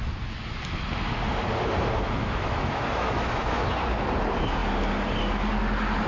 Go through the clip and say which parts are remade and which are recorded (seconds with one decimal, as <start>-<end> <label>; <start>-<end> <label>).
0.0-2.2 recorded; 2.2-3.6 remade; 3.6-6.1 recorded